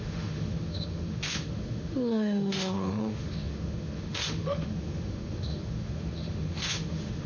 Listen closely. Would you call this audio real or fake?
fake